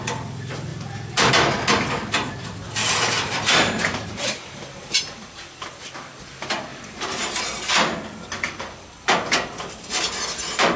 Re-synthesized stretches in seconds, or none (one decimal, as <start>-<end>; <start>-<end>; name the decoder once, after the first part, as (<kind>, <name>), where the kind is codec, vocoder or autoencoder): 2.8-5.8 (vocoder, BigVGAN v2); 6.7-7.4